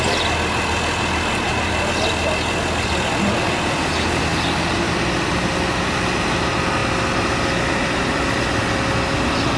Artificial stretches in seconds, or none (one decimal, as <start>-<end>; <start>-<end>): none